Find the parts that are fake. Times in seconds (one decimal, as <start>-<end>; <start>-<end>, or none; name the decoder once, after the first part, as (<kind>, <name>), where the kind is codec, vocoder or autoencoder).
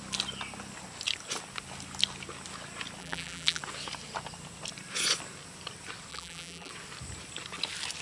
3.0-3.6 (vocoder, BigVGAN v2); 6.1-6.7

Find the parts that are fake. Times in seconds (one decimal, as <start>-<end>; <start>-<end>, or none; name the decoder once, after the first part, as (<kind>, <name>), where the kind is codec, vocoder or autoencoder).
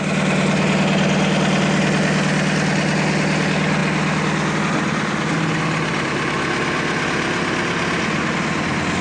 none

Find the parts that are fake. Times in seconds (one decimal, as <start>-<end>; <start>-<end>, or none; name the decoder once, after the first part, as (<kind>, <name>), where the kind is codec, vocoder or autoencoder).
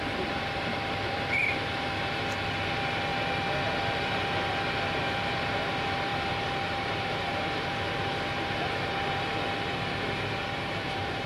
0.0-3.1 (vocoder, BigVGAN v2); 3.6-11.3